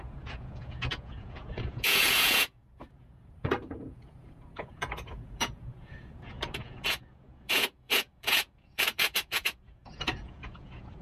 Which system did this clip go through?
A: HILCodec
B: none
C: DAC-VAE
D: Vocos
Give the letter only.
D